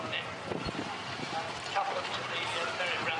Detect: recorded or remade recorded